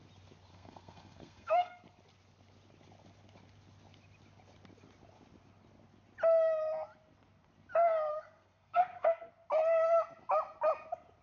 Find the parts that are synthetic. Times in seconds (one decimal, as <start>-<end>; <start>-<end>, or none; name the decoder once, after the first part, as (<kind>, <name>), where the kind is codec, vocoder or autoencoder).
0.5-1.8 (codec, SNAC); 8.1-9.3